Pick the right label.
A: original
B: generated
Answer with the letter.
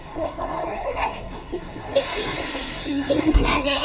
B